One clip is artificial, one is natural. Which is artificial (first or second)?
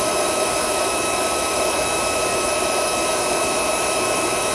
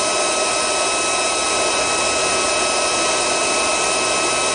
first